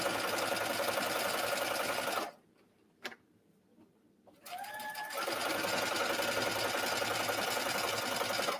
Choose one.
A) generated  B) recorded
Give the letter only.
B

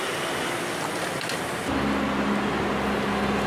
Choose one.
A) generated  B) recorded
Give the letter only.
B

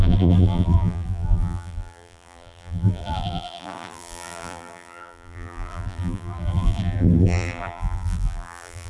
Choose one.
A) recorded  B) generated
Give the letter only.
B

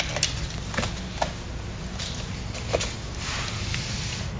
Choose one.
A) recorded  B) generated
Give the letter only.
A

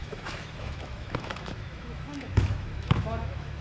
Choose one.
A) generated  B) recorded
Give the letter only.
A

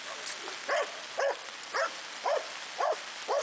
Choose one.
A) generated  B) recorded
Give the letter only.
B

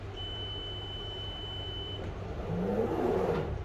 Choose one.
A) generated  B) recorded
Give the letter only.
B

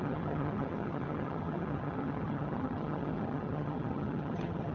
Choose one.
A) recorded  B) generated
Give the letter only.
B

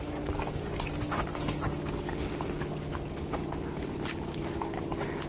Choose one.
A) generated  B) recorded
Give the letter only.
B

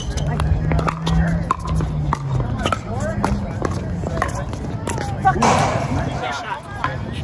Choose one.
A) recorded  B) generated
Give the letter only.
A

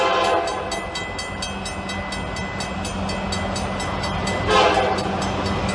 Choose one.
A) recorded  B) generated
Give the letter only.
A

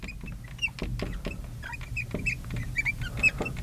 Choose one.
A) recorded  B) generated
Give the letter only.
A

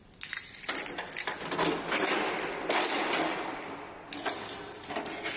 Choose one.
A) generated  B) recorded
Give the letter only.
B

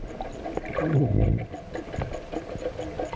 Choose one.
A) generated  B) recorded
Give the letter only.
B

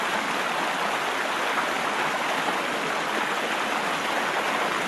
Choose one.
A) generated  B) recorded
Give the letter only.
B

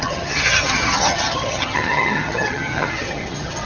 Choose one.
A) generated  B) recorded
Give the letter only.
A